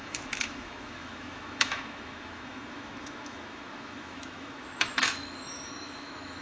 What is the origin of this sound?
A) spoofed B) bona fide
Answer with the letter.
A